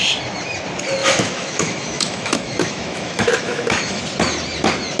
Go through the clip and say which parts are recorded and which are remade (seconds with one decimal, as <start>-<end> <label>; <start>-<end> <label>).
0.0-1.0 recorded; 1.0-4.0 remade; 4.0-5.0 recorded

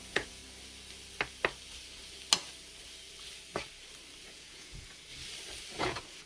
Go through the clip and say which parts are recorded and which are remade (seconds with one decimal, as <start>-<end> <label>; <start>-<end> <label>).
0.0-0.4 remade; 0.4-4.2 recorded; 4.2-5.1 remade; 5.1-5.8 recorded; 5.8-6.3 remade

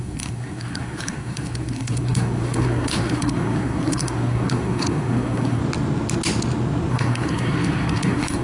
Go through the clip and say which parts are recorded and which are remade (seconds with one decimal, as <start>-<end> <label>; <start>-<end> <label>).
0.0-5.6 remade; 5.6-6.9 recorded; 6.9-8.4 remade

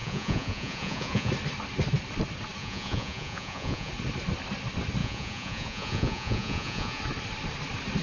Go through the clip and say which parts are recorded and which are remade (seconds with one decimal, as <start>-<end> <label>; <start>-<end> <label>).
0.0-1.3 remade; 1.3-2.6 recorded; 2.6-3.9 remade; 3.9-5.0 recorded; 5.0-7.0 remade; 7.0-8.0 recorded

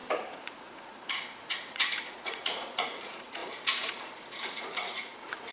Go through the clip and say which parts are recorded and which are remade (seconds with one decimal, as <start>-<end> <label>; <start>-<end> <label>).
0.0-5.5 remade

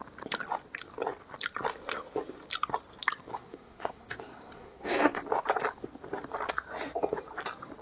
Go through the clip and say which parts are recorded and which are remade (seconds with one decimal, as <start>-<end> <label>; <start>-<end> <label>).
0.0-3.3 recorded; 3.3-5.2 remade; 5.2-7.8 recorded

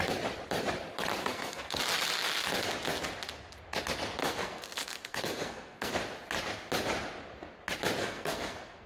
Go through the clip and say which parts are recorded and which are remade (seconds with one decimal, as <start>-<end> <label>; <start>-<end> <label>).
0.0-1.2 recorded; 1.2-1.8 remade; 1.8-4.2 recorded; 4.2-5.9 remade; 5.9-8.0 recorded; 8.0-8.9 remade